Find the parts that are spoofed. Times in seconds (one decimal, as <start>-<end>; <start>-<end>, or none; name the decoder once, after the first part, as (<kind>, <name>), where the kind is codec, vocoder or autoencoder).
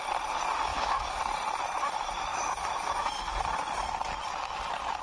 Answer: 0.7-1.2 (autoencoder, DAC-VAE); 2.3-3.1